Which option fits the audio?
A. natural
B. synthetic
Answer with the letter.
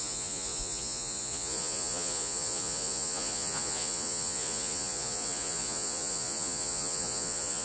B